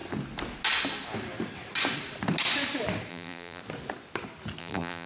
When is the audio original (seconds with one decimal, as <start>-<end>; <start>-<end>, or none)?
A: 0.0-3.1; 3.6-4.6